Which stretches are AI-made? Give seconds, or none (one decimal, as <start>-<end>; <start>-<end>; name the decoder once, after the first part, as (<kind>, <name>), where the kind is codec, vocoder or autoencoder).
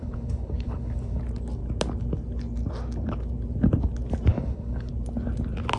0.0-1.2 (codec, HILCodec); 4.3-4.9